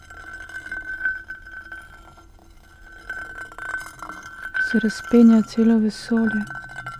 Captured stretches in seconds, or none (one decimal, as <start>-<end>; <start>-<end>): 0.0-7.0